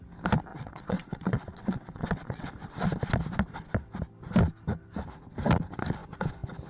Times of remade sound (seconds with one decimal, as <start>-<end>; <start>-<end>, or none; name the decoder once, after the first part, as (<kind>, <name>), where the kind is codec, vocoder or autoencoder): 0.5-2.5 (vocoder, WaveNeXt)